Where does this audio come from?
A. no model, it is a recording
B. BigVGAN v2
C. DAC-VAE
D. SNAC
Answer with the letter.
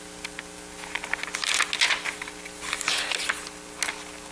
A